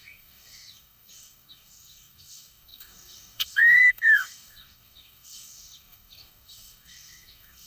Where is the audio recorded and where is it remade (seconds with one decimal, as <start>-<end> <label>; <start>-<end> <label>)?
0.0-7.7 remade